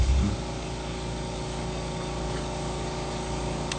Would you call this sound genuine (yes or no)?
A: no